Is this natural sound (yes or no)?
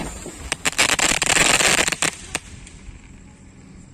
yes